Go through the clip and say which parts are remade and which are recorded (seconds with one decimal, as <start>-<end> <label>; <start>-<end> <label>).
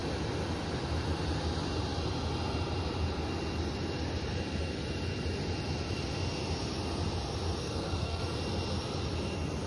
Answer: 0.0-7.6 recorded; 7.6-8.2 remade; 8.2-9.7 recorded